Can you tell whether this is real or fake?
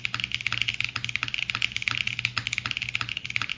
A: real